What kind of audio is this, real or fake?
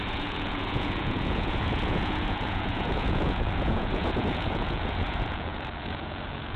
fake